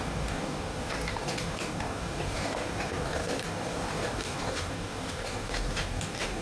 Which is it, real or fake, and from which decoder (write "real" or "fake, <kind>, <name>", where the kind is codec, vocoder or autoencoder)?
fake, codec, DAC